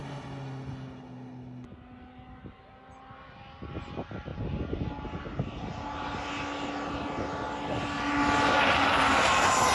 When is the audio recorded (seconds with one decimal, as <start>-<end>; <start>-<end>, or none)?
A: 0.0-9.7